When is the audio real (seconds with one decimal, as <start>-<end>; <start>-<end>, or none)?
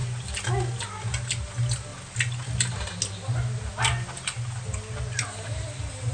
0.0-6.1